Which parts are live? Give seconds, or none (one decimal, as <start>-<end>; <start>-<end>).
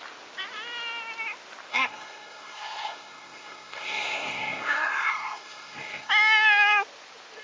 0.0-1.7; 6.1-7.4